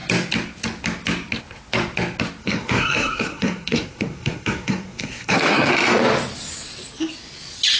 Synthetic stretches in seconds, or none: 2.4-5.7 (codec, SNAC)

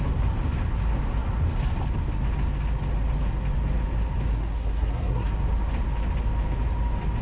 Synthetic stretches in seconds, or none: 4.3-5.3 (codec, SNAC)

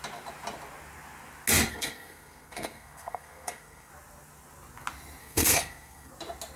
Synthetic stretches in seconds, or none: 1.7-3.9 (codec, SNAC); 5.2-6.1

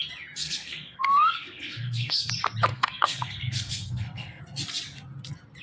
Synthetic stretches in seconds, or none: 0.4-2.3 (codec, SNAC); 2.7-4.4

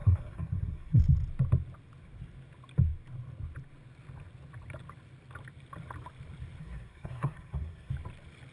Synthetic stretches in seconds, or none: 0.0-1.0 (codec, SNAC); 6.6-7.9

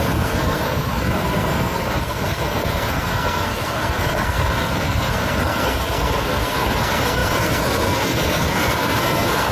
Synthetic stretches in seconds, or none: 0.0-9.5 (codec, SNAC)

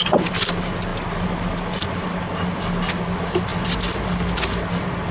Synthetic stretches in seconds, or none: none

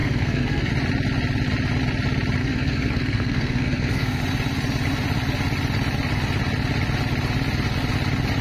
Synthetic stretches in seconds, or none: 0.0-0.7 (codec, SNAC); 2.4-4.2